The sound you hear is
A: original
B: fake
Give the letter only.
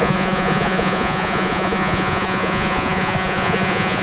B